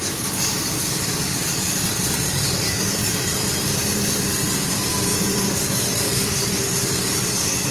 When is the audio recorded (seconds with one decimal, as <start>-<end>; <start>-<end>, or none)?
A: 3.0-5.4